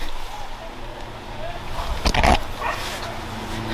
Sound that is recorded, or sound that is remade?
recorded